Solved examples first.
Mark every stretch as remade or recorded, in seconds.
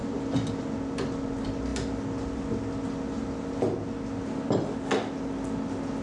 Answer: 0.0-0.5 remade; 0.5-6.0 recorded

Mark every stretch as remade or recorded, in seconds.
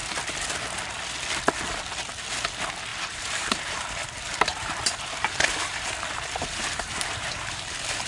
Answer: 0.0-2.9 recorded; 2.9-8.1 remade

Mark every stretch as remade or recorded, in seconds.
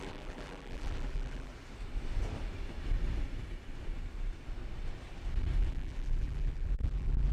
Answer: 0.0-1.5 remade; 1.5-5.6 recorded; 5.6-7.3 remade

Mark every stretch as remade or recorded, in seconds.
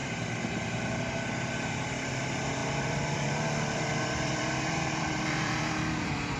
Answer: 0.0-1.0 remade; 1.0-2.6 recorded; 2.6-6.4 remade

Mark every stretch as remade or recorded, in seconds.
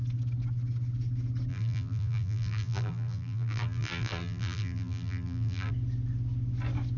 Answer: 0.0-1.5 recorded; 1.5-5.7 remade; 5.7-7.0 recorded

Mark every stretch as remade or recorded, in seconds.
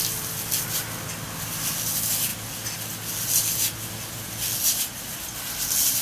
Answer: 0.0-6.0 recorded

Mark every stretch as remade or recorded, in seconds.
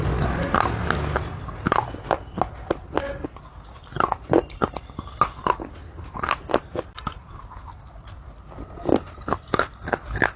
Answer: 0.0-5.8 recorded; 5.8-9.5 remade; 9.5-10.4 recorded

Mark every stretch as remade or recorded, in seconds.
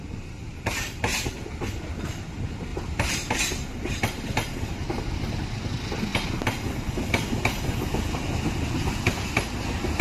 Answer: 0.0-0.5 recorded; 0.5-1.3 remade; 1.3-2.7 recorded; 2.7-3.3 remade; 3.3-10.0 recorded